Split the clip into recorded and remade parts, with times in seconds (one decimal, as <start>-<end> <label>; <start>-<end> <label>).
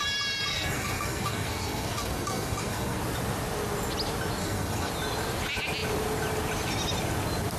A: 0.0-0.5 recorded; 0.5-3.0 remade; 3.0-4.4 recorded; 4.4-4.9 remade; 4.9-7.6 recorded